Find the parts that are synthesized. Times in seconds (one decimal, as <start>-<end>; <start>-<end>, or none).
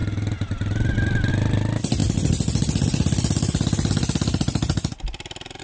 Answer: none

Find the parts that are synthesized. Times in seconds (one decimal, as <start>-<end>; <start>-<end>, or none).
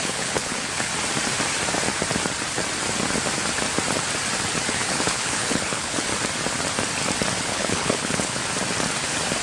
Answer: 0.0-0.9; 4.7-6.1; 7.4-8.4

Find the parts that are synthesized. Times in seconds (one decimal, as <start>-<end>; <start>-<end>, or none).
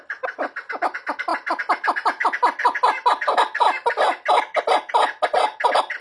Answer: none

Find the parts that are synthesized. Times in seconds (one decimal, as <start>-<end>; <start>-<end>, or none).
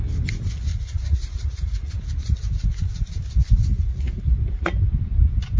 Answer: 0.7-1.9; 3.7-4.3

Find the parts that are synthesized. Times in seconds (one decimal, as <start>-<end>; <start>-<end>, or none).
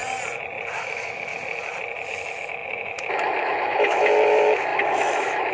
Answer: 0.8-1.3; 2.1-5.5